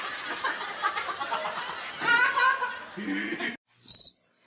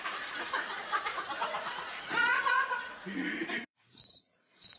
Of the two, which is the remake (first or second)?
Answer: second